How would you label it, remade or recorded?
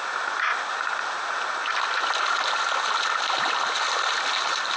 recorded